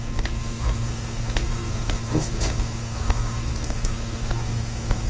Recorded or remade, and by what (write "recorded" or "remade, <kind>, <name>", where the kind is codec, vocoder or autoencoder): remade, codec, SNAC